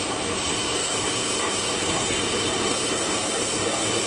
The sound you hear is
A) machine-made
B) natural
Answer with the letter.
A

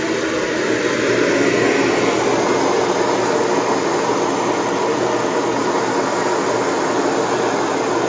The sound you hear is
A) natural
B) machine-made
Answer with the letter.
A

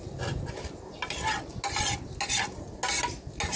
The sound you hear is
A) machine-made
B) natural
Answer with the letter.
B